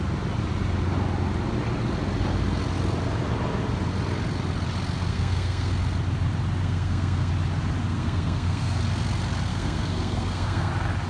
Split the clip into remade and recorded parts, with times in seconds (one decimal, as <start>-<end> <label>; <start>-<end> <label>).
0.0-5.1 recorded; 5.1-5.7 remade; 5.7-6.6 recorded; 6.6-7.3 remade; 7.3-7.8 recorded; 7.8-8.8 remade; 8.8-9.5 recorded; 9.5-10.7 remade; 10.7-11.1 recorded